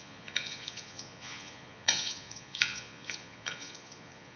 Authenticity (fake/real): fake